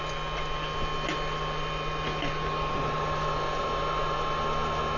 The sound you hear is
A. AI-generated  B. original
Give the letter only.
B